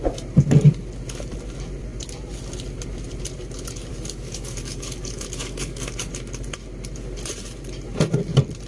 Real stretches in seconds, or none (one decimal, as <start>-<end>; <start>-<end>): 0.0-3.9; 6.1-8.7